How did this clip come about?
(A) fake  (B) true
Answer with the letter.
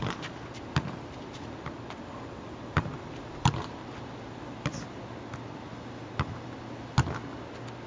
B